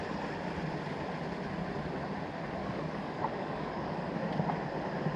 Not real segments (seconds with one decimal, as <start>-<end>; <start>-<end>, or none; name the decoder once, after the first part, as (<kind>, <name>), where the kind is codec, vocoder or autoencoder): 2.6-4.3 (codec, DAC)